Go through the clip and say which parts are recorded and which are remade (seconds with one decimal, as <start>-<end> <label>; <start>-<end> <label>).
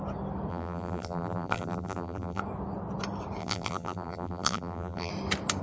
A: 0.0-0.5 recorded; 0.5-2.4 remade; 2.4-3.4 recorded; 3.4-5.1 remade; 5.1-5.6 recorded